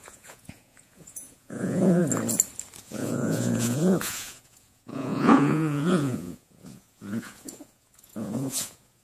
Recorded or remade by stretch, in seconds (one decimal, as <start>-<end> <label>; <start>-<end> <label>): 0.0-2.0 remade; 2.0-2.8 recorded; 2.8-9.0 remade